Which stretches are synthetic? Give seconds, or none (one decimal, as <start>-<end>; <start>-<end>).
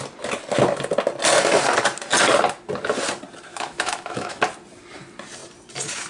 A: 3.5-4.4